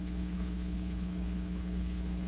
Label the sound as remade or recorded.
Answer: remade